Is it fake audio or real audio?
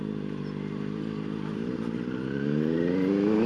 fake